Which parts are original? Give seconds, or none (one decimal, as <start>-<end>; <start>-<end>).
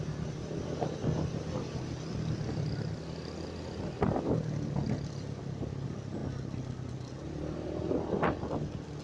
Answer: 0.0-9.0